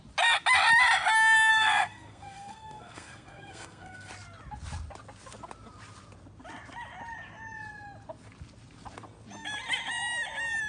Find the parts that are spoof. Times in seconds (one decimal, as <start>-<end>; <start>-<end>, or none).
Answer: 1.5-4.1